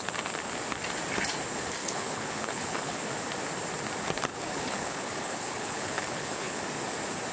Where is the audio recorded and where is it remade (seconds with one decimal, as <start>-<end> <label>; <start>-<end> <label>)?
0.0-1.8 recorded; 1.8-3.0 remade; 3.0-4.3 recorded; 4.3-6.6 remade; 6.6-7.3 recorded